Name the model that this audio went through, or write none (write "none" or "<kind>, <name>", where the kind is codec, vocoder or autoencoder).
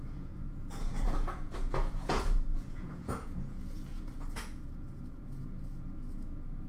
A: vocoder, Vocos